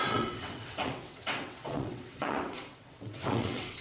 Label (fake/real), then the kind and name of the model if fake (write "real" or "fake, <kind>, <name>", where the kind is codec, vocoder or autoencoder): fake, vocoder, WaveNeXt